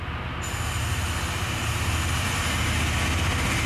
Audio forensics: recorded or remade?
recorded